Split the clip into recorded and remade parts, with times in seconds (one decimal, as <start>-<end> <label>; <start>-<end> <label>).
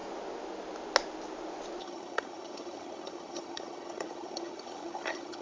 0.0-1.8 recorded; 1.8-5.4 remade